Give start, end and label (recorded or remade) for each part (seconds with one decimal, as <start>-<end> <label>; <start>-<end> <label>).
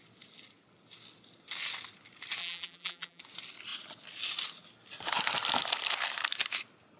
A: 0.0-2.4 recorded; 2.4-3.2 remade; 3.2-7.0 recorded